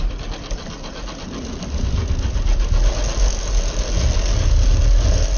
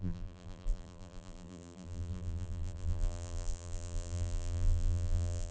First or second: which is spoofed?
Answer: second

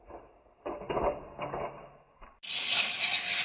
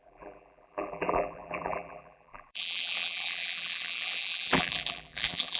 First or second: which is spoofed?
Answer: second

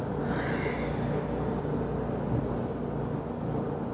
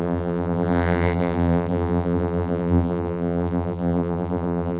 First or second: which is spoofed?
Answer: second